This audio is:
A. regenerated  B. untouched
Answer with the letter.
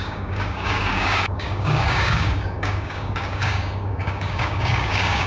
A